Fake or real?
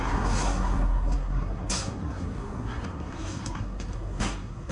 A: fake